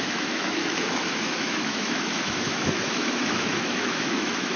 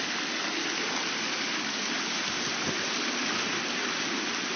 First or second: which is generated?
first